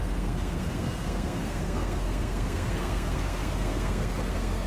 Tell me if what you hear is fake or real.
fake